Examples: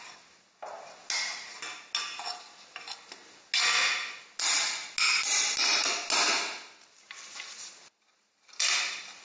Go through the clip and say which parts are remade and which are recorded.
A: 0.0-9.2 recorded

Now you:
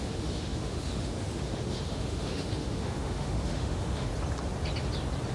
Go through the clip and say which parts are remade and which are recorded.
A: 0.0-4.1 remade; 4.1-5.3 recorded

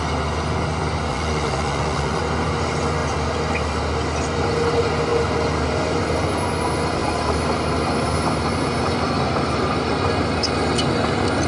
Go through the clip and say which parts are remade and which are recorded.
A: 0.0-1.1 recorded; 1.1-2.2 remade; 2.2-11.5 recorded

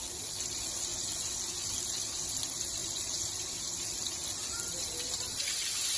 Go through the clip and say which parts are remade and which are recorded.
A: 0.0-2.8 recorded; 2.8-6.0 remade